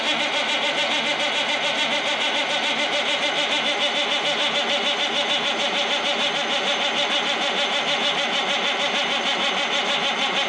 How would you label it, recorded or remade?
recorded